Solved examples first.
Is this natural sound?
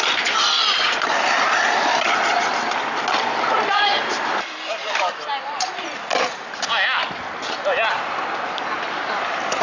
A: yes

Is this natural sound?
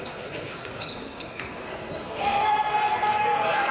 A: no